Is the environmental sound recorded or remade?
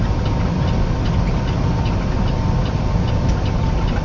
recorded